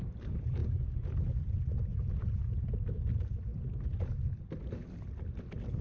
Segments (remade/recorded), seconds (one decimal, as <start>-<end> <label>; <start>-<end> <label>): 0.0-0.6 recorded; 0.6-1.3 remade; 1.3-1.9 recorded; 1.9-3.0 remade; 3.0-5.8 recorded